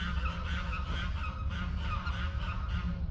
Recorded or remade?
recorded